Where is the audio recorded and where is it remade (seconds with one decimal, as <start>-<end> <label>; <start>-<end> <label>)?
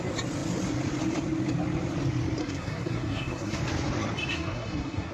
0.0-2.4 recorded; 2.4-3.6 remade; 3.6-4.3 recorded; 4.3-5.1 remade